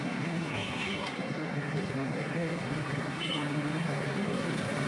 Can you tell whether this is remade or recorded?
remade